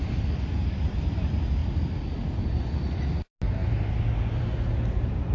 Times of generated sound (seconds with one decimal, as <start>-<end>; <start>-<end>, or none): none